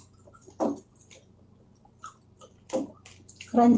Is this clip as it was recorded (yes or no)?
yes